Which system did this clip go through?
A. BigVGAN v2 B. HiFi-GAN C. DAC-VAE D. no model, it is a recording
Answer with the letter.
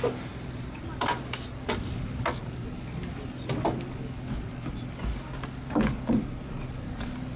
D